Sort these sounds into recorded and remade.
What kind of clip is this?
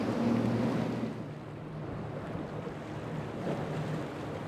recorded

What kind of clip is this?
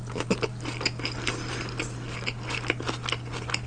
recorded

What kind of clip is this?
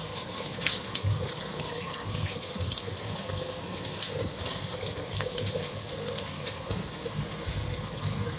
remade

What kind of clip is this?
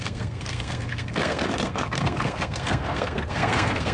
remade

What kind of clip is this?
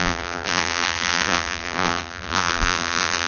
remade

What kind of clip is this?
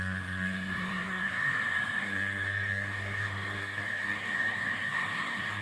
remade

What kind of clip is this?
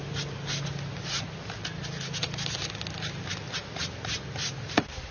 recorded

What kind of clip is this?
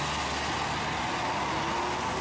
recorded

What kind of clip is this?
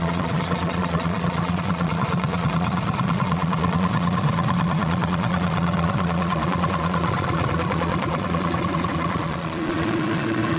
remade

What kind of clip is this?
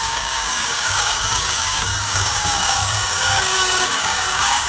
remade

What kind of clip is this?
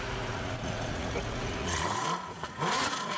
remade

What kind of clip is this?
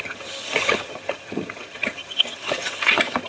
remade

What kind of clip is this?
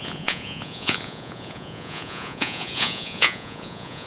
remade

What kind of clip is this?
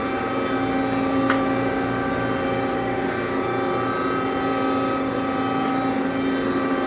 recorded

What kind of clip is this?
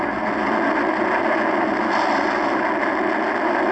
recorded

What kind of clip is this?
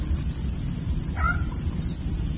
recorded